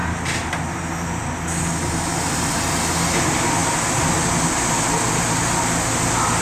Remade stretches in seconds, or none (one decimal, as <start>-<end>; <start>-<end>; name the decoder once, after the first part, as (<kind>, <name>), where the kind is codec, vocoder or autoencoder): none